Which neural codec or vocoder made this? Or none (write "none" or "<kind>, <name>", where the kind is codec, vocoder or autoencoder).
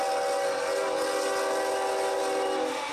none